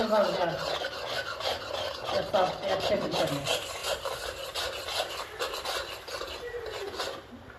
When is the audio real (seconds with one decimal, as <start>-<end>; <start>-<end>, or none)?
0.6-7.6